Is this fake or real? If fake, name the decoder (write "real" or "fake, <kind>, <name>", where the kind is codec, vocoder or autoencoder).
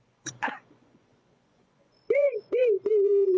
fake, vocoder, Vocos